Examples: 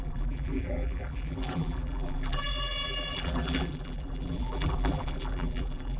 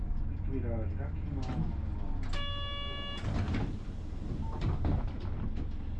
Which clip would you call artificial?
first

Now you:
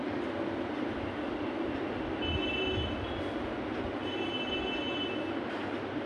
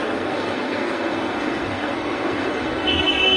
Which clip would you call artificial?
second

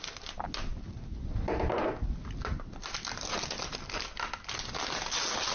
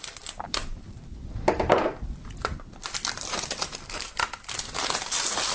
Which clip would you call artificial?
second